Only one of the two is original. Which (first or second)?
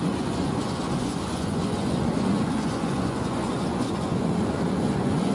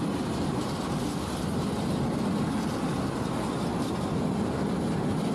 second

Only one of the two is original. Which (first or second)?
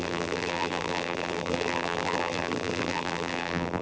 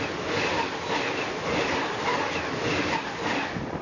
second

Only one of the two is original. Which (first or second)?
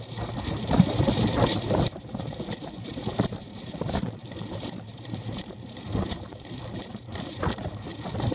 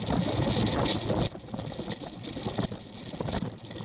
second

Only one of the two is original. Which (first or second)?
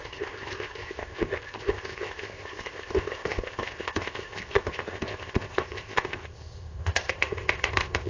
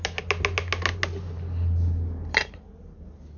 second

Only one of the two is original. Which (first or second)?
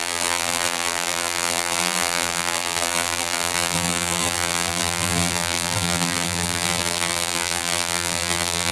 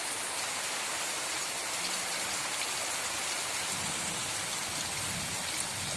second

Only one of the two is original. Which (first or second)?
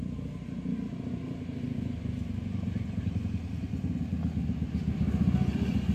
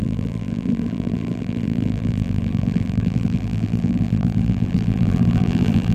first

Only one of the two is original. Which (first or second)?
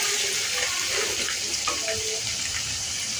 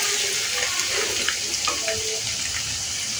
second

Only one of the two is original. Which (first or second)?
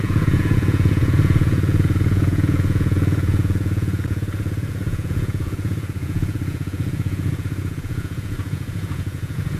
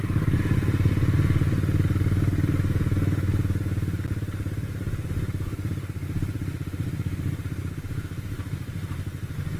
second